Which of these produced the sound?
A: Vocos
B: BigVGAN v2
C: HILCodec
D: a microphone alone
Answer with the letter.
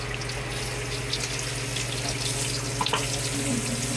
D